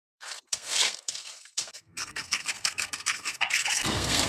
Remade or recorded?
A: remade